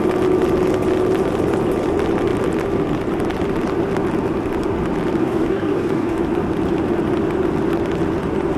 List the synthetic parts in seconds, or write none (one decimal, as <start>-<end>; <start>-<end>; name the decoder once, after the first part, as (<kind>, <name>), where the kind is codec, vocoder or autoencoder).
5.2-6.2 (codec, DAC)